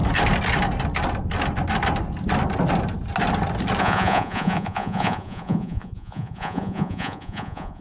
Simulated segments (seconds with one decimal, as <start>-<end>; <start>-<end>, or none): 3.8-7.8